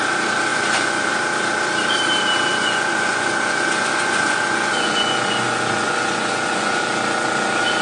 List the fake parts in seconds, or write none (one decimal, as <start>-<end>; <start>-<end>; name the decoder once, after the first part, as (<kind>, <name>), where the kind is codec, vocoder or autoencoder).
0.5-1.1 (vocoder, Vocos); 2.5-6.8